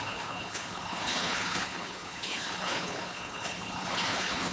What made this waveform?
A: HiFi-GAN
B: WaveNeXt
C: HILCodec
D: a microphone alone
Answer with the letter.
C